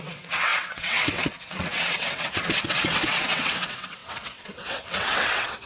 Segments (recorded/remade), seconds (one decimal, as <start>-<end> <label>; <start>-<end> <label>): 0.0-5.7 remade